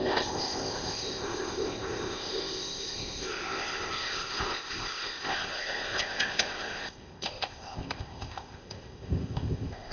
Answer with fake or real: fake